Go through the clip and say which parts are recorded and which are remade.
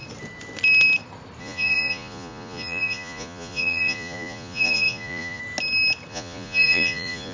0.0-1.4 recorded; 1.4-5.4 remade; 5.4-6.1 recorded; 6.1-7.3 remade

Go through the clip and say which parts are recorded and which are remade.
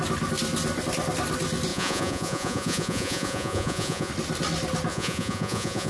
0.0-1.7 recorded; 1.7-4.1 remade; 4.1-4.9 recorded; 4.9-5.9 remade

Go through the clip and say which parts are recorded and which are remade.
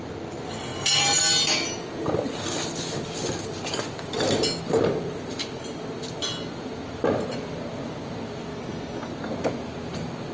0.0-8.5 recorded; 8.5-9.1 remade; 9.1-10.3 recorded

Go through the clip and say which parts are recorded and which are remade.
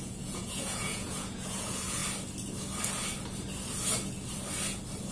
0.0-2.0 remade; 2.0-5.1 recorded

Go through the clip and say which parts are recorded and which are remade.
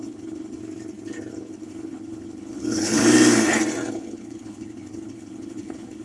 0.0-0.6 remade; 0.6-1.3 recorded; 1.3-3.0 remade; 3.0-3.9 recorded; 3.9-6.0 remade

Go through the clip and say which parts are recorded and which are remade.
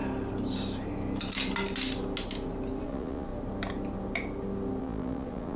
0.0-2.8 recorded; 2.8-3.3 remade; 3.3-4.8 recorded; 4.8-5.6 remade